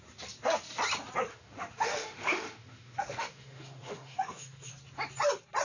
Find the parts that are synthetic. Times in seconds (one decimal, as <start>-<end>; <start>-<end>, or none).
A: 1.3-4.7